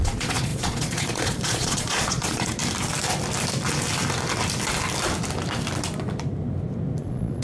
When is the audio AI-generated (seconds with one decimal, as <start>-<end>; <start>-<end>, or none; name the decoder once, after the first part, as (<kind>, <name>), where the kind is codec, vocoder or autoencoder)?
0.0-2.6 (vocoder, Vocos); 7.0-7.4